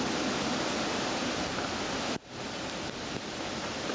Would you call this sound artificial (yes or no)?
no